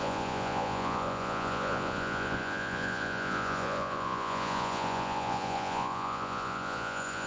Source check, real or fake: fake